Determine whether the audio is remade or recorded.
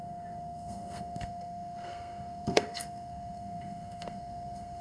remade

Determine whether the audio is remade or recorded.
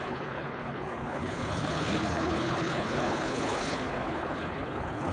remade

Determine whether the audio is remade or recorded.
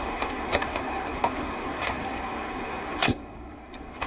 remade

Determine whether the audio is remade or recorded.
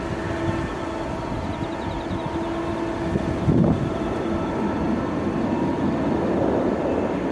recorded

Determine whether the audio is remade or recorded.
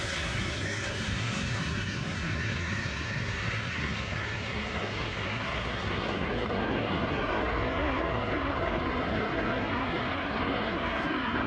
remade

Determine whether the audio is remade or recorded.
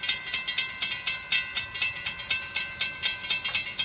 recorded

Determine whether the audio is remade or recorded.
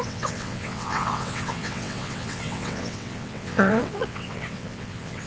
remade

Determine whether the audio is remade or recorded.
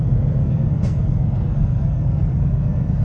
remade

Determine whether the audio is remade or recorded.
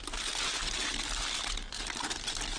recorded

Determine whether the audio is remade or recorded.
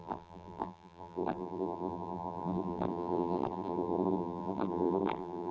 remade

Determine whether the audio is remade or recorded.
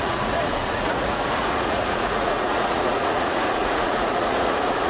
remade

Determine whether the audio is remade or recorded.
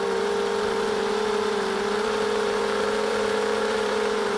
remade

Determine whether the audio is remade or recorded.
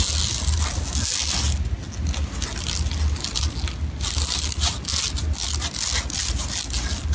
recorded